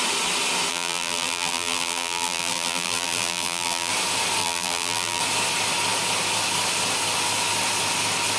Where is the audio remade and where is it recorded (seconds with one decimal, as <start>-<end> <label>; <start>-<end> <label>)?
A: 0.0-0.7 recorded; 0.7-3.9 remade; 3.9-4.4 recorded; 4.4-5.2 remade; 5.2-8.4 recorded